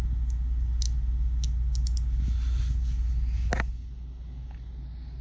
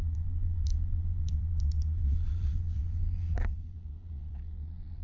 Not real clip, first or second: second